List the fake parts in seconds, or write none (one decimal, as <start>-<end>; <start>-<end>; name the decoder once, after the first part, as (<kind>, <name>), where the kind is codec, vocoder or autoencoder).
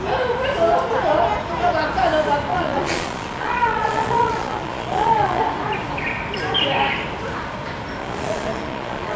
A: 2.5-5.4 (vocoder, Vocos); 8.0-9.2